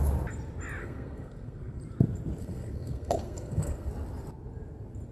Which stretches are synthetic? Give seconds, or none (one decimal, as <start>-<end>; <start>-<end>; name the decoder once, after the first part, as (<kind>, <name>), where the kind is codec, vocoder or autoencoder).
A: 0.8-1.8 (codec, SNAC); 2.4-3.9

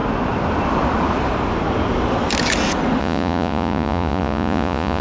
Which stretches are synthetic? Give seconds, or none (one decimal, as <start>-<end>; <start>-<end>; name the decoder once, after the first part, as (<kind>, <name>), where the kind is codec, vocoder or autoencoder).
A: 3.0-5.0 (vocoder, Vocos)

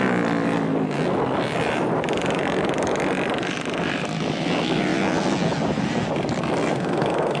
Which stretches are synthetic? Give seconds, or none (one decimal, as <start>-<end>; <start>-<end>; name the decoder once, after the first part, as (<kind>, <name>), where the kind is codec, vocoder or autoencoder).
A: 6.7-7.4 (codec, SNAC)

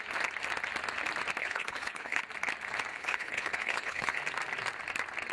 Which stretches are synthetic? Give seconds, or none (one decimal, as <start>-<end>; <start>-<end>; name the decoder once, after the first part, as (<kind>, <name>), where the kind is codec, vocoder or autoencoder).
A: 1.4-2.2 (codec, HILCodec); 2.9-4.2

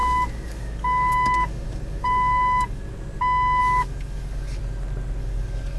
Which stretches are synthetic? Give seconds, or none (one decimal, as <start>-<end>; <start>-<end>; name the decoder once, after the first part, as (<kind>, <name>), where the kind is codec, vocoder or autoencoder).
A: 0.0-2.8 (codec, DAC); 3.6-4.6; 5.2-5.8